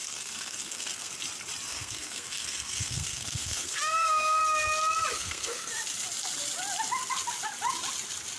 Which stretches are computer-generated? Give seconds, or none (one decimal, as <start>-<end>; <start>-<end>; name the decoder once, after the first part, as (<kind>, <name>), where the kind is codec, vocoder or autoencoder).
0.0-1.1 (codec, SNAC); 1.7-4.4; 5.1-5.7